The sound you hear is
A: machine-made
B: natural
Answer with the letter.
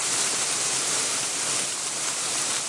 A